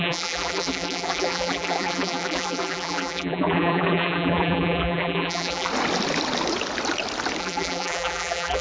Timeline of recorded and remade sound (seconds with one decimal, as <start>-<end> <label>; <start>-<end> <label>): 0.0-5.7 remade; 5.7-7.4 recorded; 7.4-8.6 remade